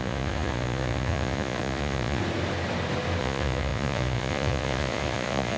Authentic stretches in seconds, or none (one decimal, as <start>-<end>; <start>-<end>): 2.2-3.2